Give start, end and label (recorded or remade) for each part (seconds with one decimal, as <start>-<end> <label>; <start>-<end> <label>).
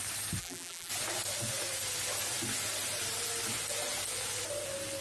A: 0.0-0.4 recorded; 0.4-0.9 remade; 0.9-5.0 recorded